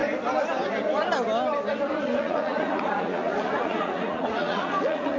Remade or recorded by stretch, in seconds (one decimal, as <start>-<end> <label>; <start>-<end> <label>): 0.0-2.0 recorded; 2.0-5.2 remade

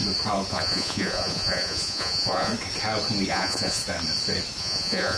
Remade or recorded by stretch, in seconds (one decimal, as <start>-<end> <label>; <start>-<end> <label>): 0.0-0.5 recorded; 0.5-2.5 remade; 2.5-3.3 recorded; 3.3-3.8 remade; 3.8-4.6 recorded; 4.6-5.2 remade

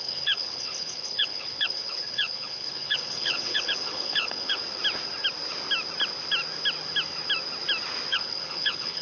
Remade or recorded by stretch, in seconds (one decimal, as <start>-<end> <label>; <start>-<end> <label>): 0.0-4.6 remade; 4.6-8.1 recorded; 8.1-9.0 remade

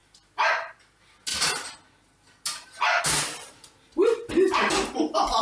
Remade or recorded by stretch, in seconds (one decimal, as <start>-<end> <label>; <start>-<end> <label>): 0.0-5.4 recorded

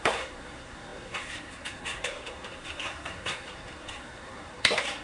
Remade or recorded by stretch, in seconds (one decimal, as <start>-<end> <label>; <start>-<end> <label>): 0.0-5.0 remade

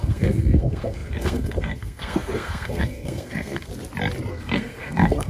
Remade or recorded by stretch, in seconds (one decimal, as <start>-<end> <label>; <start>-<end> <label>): 0.0-3.7 remade; 3.7-4.3 recorded; 4.3-5.3 remade

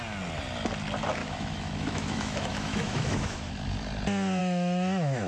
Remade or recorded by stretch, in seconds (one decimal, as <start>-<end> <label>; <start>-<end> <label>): 0.0-1.2 recorded; 1.2-3.5 remade; 3.5-4.4 recorded; 4.4-5.3 remade